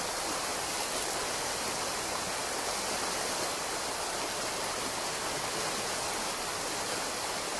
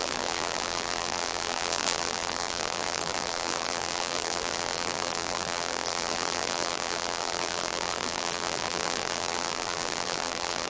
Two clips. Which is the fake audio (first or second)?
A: second